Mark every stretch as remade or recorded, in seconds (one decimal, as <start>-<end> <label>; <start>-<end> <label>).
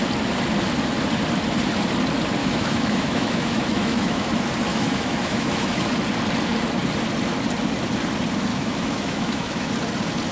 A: 0.0-2.4 recorded; 2.4-4.3 remade; 4.3-4.7 recorded; 4.7-5.9 remade; 5.9-8.5 recorded; 8.5-9.7 remade; 9.7-10.3 recorded